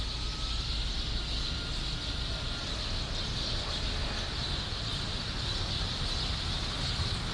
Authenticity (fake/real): real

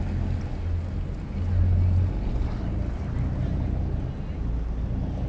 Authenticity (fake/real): real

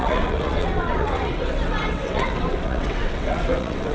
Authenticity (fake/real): fake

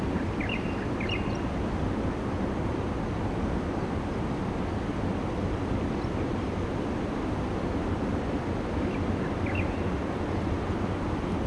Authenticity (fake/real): real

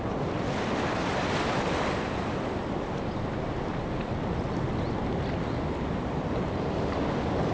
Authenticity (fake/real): real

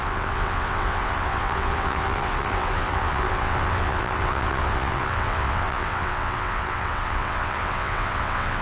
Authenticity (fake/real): fake